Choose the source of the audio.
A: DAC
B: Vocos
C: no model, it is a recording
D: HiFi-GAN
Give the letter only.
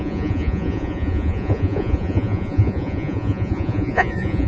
B